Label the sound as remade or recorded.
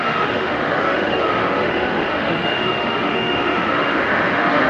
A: remade